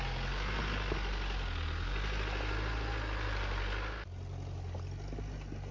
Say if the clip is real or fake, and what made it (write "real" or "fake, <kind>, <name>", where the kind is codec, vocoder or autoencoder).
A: real